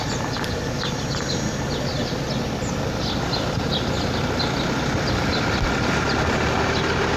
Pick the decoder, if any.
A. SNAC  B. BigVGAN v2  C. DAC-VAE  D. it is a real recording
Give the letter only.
D